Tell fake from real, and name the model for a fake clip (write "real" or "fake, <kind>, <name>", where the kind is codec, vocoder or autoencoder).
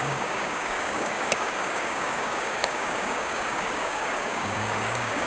fake, codec, DAC